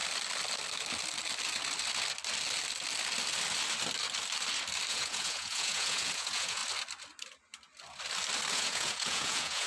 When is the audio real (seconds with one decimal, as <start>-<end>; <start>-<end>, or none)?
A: 0.0-4.9; 6.6-8.5